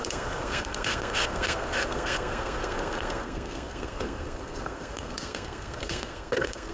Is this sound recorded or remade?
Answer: remade